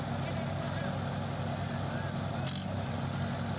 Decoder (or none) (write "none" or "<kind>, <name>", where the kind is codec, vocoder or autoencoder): none